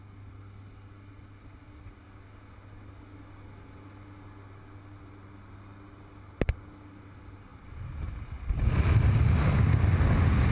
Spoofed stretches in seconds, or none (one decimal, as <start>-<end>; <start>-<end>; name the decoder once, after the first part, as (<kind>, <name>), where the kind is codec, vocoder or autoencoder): 7.5-9.0 (vocoder, BigVGAN v2)